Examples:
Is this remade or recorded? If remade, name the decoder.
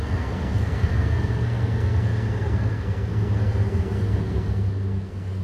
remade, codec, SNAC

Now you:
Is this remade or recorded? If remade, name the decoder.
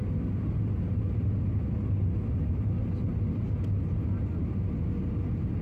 recorded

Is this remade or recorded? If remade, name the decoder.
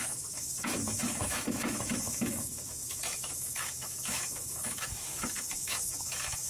remade, autoencoder, DAC-VAE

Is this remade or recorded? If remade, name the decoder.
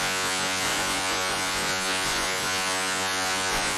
remade, vocoder, Vocos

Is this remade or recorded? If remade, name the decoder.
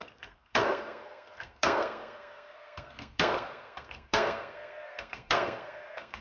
remade, codec, SNAC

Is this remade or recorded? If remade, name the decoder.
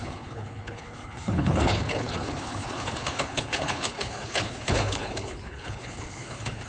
remade, codec, HILCodec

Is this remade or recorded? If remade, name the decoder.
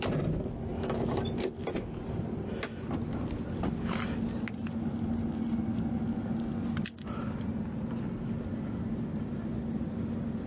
recorded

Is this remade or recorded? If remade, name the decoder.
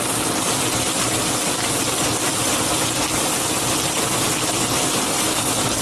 recorded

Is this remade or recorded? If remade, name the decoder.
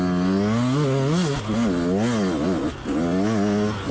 recorded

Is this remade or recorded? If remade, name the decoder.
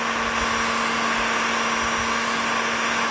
recorded